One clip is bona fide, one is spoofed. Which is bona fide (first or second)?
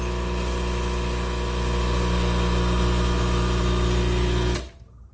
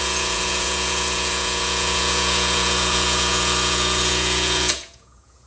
first